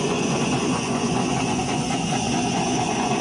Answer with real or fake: fake